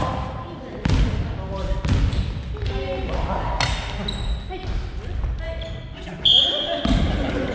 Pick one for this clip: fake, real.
real